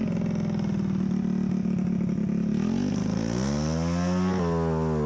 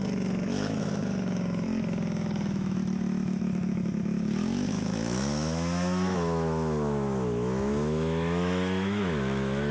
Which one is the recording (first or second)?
first